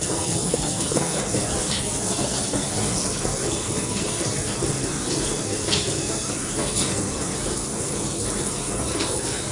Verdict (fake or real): fake